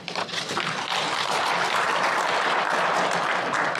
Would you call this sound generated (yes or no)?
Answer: no